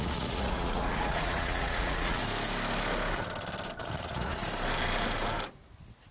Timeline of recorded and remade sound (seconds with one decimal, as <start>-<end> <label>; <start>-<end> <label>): 0.0-2.2 remade; 2.2-3.8 recorded; 3.8-4.4 remade; 4.4-6.1 recorded